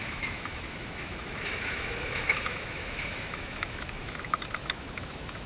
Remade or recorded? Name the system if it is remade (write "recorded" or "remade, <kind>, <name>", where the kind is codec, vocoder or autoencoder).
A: remade, autoencoder, DAC-VAE